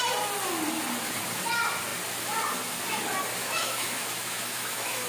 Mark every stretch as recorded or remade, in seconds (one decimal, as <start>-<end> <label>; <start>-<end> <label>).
0.0-3.4 recorded; 3.4-5.1 remade